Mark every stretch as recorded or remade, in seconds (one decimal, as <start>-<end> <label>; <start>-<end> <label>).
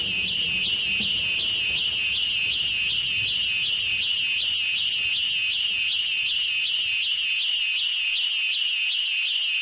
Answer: 0.0-9.6 recorded